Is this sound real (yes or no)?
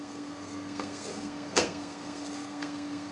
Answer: no